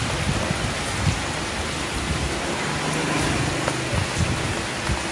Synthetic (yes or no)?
no